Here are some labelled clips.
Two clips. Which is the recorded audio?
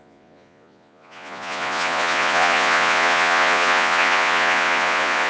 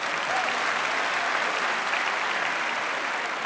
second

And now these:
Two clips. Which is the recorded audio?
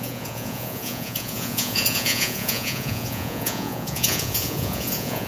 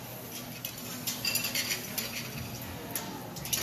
second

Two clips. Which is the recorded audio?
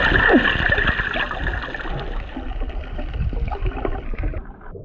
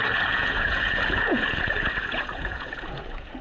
first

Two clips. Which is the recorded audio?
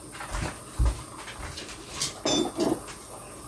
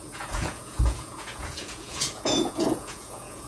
first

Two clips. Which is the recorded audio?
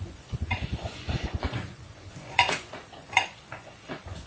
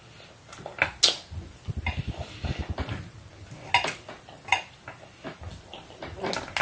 second